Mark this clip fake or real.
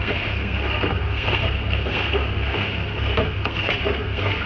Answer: fake